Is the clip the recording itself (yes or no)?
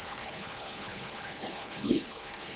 no